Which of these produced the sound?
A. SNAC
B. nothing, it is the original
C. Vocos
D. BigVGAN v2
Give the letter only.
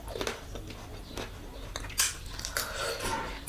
B